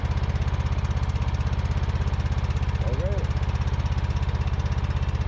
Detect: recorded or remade recorded